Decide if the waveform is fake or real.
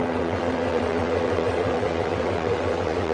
fake